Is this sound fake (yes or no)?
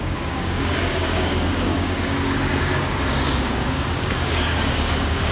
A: yes